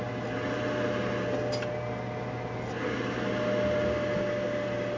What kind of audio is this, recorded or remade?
recorded